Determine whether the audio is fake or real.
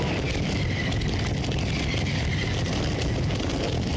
real